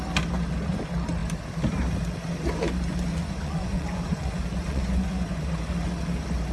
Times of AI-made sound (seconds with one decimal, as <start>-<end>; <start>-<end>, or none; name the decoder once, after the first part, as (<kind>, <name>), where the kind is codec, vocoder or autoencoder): 3.1-5.4 (vocoder, Vocos)

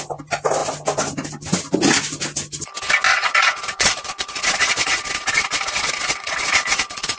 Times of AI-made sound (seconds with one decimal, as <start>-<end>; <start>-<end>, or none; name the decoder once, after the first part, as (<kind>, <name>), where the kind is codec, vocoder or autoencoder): 3.1-7.2 (vocoder, Vocos)

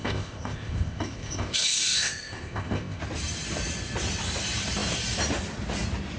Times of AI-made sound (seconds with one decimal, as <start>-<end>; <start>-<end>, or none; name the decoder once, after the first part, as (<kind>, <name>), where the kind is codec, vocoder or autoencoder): 0.0-3.0 (codec, ZipCodec)

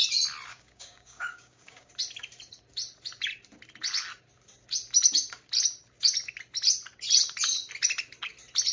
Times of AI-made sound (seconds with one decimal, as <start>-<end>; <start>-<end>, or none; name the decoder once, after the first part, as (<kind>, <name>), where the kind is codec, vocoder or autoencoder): 0.5-1.9 (codec, DAC)